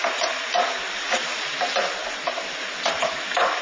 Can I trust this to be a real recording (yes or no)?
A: yes